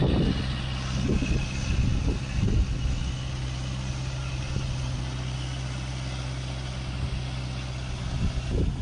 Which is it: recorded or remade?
recorded